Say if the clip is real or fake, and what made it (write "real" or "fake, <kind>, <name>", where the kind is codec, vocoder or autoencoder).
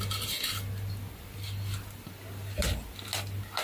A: real